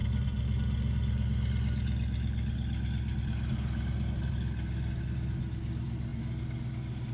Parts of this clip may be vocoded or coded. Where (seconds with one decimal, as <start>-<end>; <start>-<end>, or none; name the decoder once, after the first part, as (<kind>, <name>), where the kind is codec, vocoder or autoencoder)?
none